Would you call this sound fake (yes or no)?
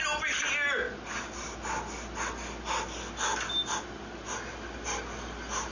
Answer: no